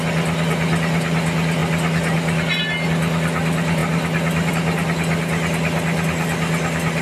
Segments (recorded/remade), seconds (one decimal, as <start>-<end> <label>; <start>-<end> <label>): 0.0-7.0 recorded